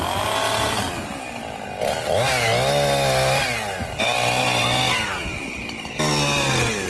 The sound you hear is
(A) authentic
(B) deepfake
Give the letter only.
A